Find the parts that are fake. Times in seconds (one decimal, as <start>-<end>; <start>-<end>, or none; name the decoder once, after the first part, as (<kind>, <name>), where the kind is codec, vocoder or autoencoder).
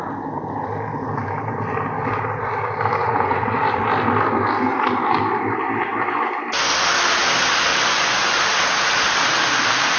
3.0-3.6 (vocoder, Vocos); 7.7-8.4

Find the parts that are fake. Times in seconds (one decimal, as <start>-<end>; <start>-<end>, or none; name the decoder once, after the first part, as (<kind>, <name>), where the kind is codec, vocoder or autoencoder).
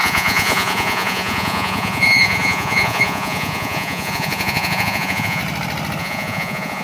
0.0-5.4 (vocoder, Vocos); 6.0-6.8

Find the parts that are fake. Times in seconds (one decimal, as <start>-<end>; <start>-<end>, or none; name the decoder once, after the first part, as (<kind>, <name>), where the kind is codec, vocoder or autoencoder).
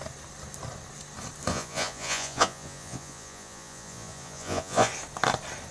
1.5-4.9 (vocoder, Vocos)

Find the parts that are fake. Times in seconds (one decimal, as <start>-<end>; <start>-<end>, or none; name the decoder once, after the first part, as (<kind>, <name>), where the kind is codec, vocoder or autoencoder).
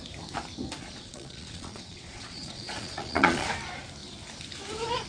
0.8-3.5 (vocoder, Vocos)